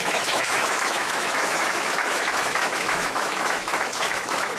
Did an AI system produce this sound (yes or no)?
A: yes